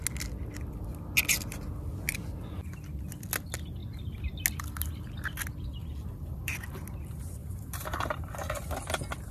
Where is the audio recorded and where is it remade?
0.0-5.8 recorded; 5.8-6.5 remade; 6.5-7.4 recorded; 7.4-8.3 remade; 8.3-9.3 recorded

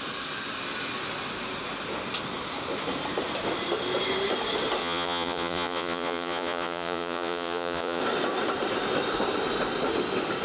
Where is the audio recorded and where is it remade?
0.0-4.8 recorded; 4.8-8.0 remade; 8.0-10.4 recorded

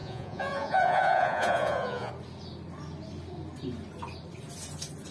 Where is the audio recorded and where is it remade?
0.0-2.1 remade; 2.1-5.1 recorded

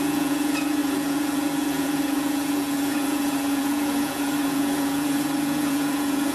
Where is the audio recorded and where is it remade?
0.0-6.3 remade

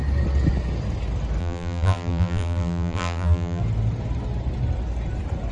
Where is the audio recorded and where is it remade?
0.0-1.4 recorded; 1.4-3.6 remade; 3.6-5.5 recorded